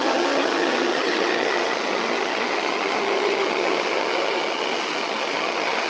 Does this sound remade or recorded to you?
remade